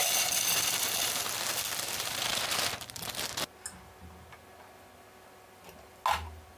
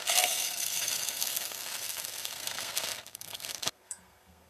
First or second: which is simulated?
second